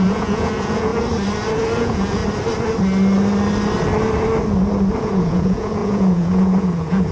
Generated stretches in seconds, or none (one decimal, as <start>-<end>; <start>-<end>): 0.0-0.9; 1.8-2.2; 5.0-7.1